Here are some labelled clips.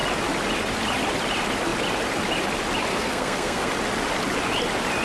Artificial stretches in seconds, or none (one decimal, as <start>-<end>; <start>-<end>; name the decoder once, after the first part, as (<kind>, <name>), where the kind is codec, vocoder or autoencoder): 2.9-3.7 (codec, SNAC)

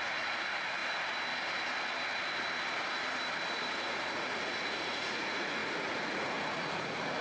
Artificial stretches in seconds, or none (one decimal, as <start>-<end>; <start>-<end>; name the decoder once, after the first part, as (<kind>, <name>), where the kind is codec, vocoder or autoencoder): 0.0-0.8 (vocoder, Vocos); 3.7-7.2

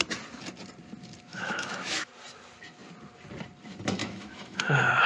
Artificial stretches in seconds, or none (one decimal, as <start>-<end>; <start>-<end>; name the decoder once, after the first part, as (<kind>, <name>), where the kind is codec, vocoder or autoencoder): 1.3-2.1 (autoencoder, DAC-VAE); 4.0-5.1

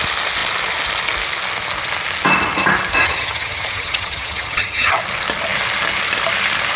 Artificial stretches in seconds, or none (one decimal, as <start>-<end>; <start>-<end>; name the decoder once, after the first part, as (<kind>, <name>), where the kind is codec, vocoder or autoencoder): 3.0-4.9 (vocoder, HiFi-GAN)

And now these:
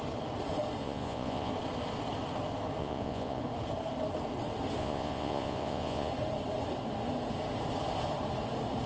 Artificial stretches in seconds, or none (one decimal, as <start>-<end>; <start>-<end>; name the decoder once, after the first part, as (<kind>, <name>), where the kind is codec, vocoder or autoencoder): 0.8-1.5 (vocoder, Vocos); 2.8-3.4; 4.8-6.1

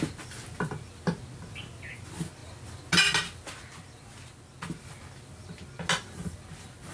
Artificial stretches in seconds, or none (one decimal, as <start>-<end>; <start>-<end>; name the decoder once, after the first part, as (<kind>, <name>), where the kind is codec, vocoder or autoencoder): none

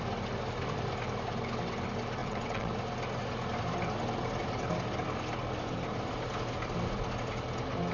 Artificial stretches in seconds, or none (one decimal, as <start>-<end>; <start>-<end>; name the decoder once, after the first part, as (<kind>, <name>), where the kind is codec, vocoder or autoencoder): 2.2-2.7 (vocoder, WaveNeXt)

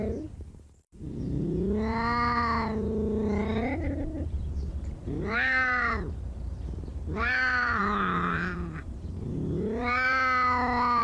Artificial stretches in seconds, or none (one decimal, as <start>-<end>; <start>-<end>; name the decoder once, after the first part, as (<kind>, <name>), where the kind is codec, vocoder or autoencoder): 0.0-10.1 (vocoder, BigVGAN v2)